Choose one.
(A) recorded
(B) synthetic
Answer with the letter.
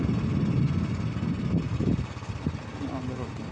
A